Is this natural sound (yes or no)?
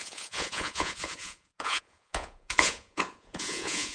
no